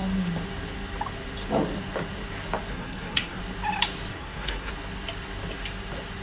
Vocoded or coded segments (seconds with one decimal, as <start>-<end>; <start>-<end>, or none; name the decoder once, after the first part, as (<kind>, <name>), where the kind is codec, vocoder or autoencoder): 2.7-3.4 (codec, SNAC); 4.1-4.7